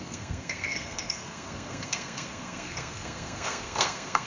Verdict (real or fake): fake